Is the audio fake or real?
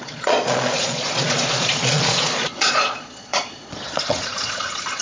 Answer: fake